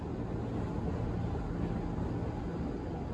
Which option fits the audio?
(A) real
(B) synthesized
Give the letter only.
A